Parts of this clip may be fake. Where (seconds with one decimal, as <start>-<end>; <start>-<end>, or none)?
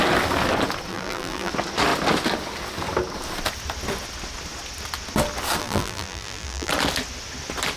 0.9-1.5; 5.6-6.7